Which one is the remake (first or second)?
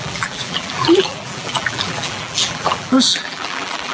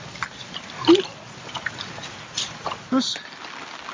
first